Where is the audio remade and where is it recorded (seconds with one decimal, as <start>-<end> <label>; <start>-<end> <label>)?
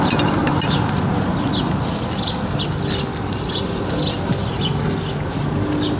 0.0-6.0 recorded